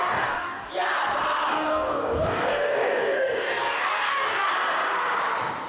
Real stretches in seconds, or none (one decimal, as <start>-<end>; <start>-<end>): 0.7-1.5; 4.5-5.7